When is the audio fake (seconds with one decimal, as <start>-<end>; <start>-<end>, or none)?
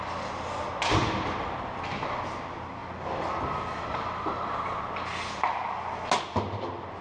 none